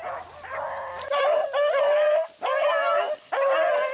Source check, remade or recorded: recorded